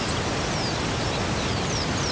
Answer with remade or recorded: recorded